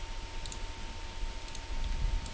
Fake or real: real